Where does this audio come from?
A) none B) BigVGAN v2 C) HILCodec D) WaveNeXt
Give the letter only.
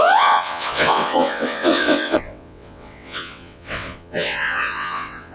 D